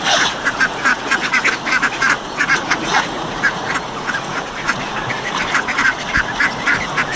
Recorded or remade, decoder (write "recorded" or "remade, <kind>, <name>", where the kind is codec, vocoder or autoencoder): remade, vocoder, Vocos